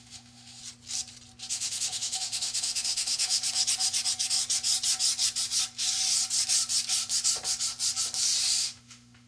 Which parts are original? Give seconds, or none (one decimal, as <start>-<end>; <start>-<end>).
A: 0.6-1.5; 3.4-8.6